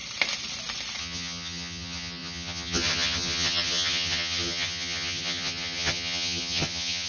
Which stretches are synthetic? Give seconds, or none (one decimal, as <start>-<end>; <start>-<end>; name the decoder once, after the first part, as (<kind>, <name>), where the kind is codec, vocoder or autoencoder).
1.0-7.1 (vocoder, HiFi-GAN)